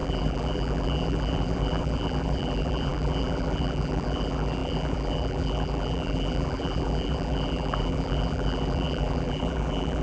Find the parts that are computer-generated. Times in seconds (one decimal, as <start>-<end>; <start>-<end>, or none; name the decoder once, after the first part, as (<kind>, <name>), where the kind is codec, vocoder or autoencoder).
0.0-10.0 (vocoder, BigVGAN v2)